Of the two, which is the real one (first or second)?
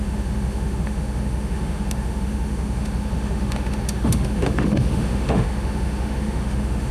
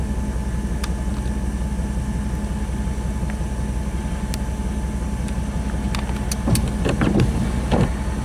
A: second